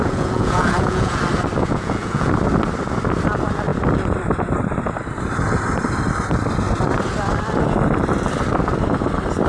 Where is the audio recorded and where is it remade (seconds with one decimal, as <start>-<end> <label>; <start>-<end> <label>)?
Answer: 0.0-1.2 remade; 1.2-1.6 recorded; 1.6-2.3 remade; 2.3-9.5 recorded